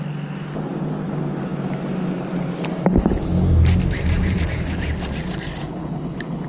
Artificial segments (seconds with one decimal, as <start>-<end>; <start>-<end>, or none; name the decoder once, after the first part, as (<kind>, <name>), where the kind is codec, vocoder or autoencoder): 5.5-6.5 (codec, HILCodec)